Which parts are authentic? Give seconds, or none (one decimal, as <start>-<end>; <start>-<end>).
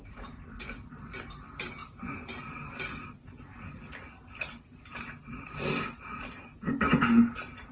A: 0.0-7.7